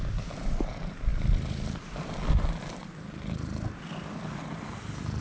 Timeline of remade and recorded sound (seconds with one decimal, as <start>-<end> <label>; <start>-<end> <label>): 0.0-5.2 recorded